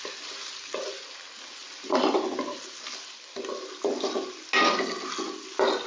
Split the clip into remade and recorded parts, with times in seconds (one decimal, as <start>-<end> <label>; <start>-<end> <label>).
0.0-5.9 recorded

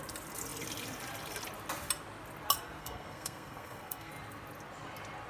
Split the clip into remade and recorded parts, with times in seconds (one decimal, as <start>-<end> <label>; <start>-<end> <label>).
0.0-2.8 recorded; 2.8-4.1 remade; 4.1-5.3 recorded

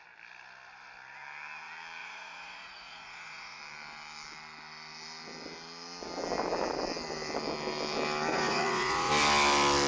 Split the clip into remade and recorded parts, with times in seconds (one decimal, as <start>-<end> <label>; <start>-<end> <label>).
0.0-2.0 recorded; 2.0-3.6 remade; 3.6-8.3 recorded; 8.3-9.1 remade; 9.1-9.9 recorded

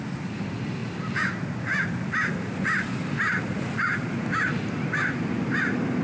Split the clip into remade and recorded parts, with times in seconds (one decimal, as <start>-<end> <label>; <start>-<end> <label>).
0.0-6.0 recorded

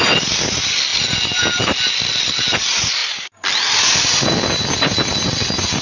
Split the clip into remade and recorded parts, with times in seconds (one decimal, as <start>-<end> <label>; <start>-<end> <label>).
0.0-5.8 recorded

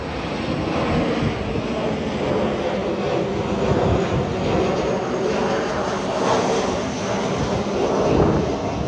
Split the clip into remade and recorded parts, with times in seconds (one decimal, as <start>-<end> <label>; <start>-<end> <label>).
0.0-8.9 recorded

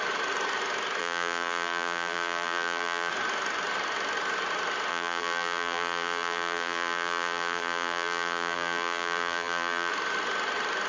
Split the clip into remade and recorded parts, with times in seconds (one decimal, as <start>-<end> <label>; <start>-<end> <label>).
0.0-1.0 recorded; 1.0-3.1 remade; 3.1-4.9 recorded; 4.9-9.9 remade; 9.9-10.9 recorded

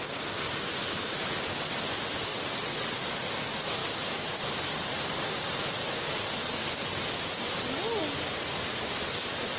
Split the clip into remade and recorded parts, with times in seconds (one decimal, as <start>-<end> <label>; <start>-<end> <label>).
0.0-2.3 recorded; 2.3-2.9 remade; 2.9-9.6 recorded